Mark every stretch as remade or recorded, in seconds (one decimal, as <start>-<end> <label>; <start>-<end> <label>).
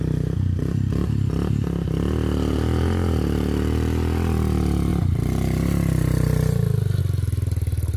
0.0-8.0 recorded